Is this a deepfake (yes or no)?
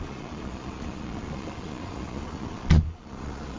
yes